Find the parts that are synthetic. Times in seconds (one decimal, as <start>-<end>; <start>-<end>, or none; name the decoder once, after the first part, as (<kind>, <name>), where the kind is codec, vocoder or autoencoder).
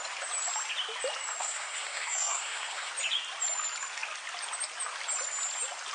1.4-2.9 (codec, SNAC)